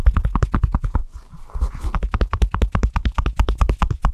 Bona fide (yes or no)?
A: yes